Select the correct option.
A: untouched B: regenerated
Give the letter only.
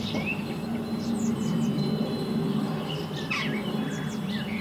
A